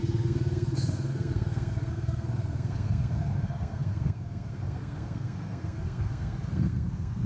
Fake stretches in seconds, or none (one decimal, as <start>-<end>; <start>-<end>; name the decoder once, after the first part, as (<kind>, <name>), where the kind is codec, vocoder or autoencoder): 0.0-7.3 (codec, SNAC)